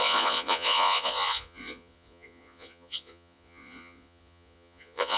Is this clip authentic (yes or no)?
no